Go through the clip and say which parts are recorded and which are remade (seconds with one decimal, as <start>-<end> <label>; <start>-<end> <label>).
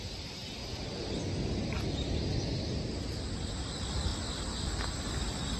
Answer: 0.0-5.6 recorded